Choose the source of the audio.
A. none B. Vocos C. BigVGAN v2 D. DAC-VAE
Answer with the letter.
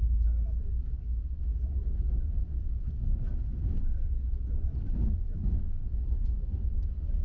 A